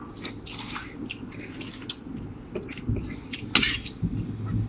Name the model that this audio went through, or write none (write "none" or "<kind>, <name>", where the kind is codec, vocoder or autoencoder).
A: none